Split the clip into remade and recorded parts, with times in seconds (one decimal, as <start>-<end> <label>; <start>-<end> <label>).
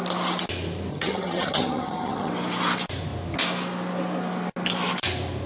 0.0-0.9 recorded; 0.9-2.3 remade; 2.3-5.5 recorded